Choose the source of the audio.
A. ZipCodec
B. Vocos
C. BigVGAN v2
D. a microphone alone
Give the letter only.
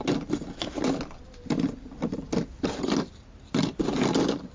D